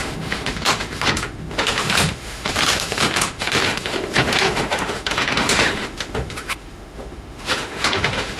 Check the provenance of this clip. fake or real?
fake